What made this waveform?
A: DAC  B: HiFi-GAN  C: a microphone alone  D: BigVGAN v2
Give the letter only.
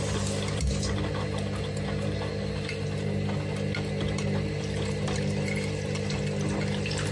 C